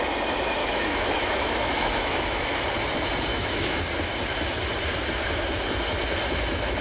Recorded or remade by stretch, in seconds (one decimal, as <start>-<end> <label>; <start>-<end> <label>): 0.0-0.6 recorded; 0.6-2.6 remade; 2.6-3.3 recorded; 3.3-3.8 remade; 3.8-6.8 recorded